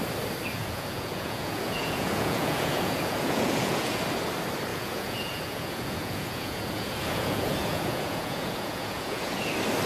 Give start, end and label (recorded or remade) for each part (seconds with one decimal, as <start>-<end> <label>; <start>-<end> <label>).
0.0-0.6 recorded; 0.6-4.0 remade; 4.0-4.7 recorded; 4.7-9.5 remade; 9.5-9.9 recorded